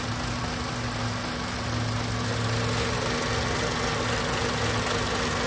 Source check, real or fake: real